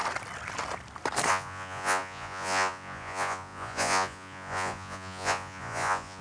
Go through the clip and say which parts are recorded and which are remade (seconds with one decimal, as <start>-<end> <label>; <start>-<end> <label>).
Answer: 0.0-1.3 recorded; 1.3-6.2 remade